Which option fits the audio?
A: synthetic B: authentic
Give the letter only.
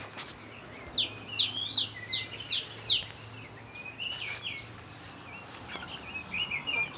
B